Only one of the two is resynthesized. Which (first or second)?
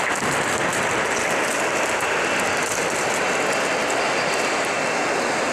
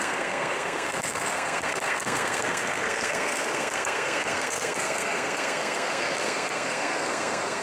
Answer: second